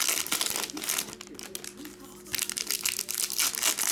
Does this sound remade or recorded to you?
recorded